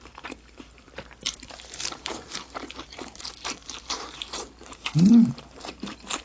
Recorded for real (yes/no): no